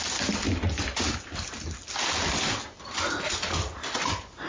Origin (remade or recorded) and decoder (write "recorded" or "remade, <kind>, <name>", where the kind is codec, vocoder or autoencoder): recorded